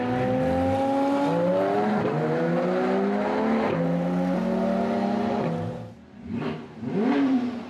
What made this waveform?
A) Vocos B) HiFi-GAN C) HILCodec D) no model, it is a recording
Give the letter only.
D